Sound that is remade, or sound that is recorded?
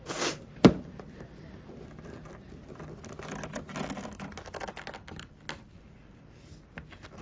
recorded